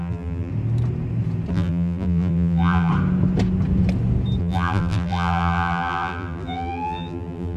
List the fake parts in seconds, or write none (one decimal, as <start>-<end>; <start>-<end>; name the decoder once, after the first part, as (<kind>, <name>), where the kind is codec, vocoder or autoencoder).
0.0-0.5 (vocoder, BigVGAN v2); 1.5-2.9; 4.4-7.6